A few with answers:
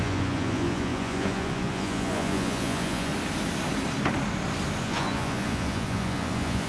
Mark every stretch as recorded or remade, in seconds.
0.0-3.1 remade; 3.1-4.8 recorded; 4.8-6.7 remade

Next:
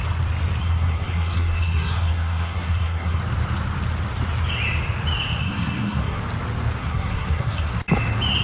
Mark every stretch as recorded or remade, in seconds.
0.0-0.6 recorded; 0.6-3.2 remade; 3.2-5.4 recorded; 5.4-6.2 remade; 6.2-6.8 recorded; 6.8-7.7 remade; 7.7-8.4 recorded

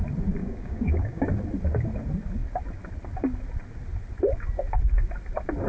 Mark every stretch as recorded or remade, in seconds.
0.0-0.4 recorded; 0.4-1.3 remade; 1.3-5.7 recorded

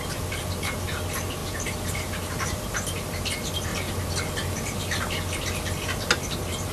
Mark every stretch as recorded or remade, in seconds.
0.0-1.4 recorded; 1.4-2.6 remade; 2.6-6.7 recorded

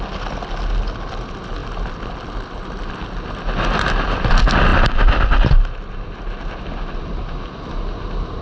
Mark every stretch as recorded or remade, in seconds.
0.0-8.4 recorded

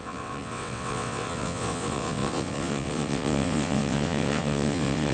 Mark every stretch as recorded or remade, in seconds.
0.0-5.1 remade

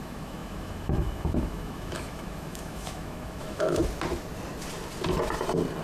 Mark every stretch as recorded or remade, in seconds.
0.0-3.8 remade; 3.8-5.8 recorded